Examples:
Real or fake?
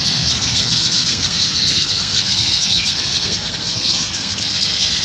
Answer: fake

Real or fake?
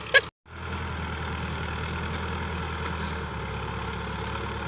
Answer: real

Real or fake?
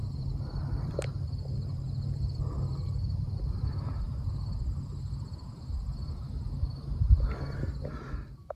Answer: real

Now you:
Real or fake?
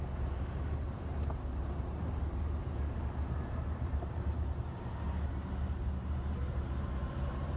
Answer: fake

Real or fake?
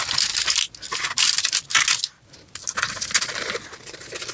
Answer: real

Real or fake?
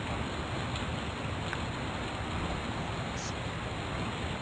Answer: real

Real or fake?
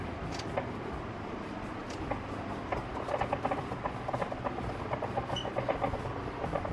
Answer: real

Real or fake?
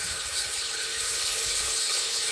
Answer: fake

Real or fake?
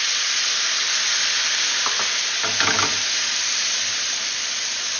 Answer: real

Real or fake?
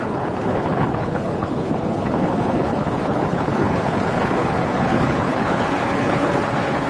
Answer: fake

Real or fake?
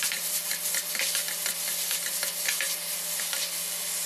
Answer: real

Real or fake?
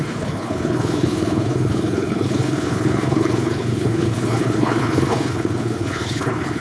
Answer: fake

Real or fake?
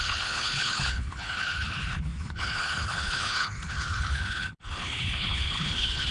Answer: fake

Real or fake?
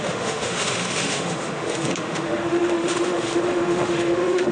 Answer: fake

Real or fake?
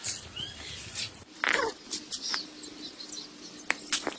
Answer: real